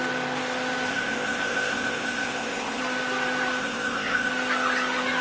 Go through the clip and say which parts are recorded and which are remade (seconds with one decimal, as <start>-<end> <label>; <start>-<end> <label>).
0.0-0.9 recorded; 0.9-2.8 remade; 2.8-3.6 recorded; 3.6-4.3 remade; 4.3-5.2 recorded